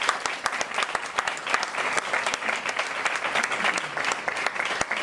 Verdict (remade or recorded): recorded